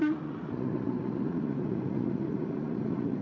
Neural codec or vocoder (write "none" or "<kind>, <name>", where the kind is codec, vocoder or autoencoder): vocoder, Vocos